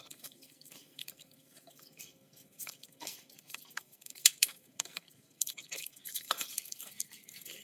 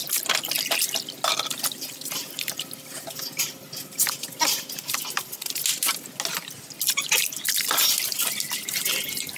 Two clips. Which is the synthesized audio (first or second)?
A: first